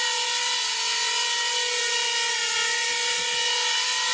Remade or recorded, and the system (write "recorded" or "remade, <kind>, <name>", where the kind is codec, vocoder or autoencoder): recorded